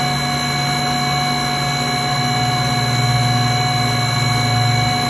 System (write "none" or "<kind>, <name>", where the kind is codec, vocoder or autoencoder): none